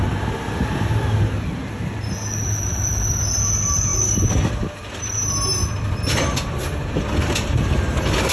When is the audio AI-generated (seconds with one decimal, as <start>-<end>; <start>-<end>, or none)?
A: none